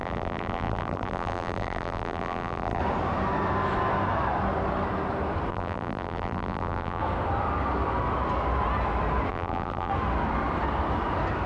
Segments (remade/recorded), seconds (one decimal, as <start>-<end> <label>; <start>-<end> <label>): 0.0-2.8 remade; 2.8-5.5 recorded; 5.5-7.0 remade; 7.0-9.3 recorded; 9.3-9.9 remade; 9.9-11.5 recorded